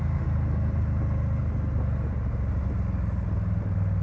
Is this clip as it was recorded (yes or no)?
yes